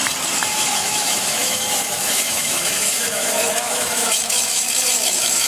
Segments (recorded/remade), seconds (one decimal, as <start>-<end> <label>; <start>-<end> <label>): 0.0-0.5 recorded; 0.5-5.5 remade